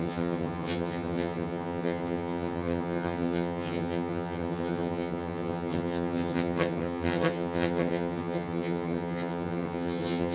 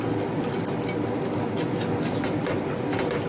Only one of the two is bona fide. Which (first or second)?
second